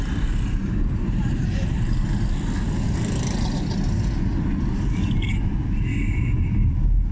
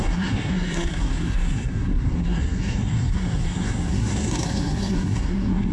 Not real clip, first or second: second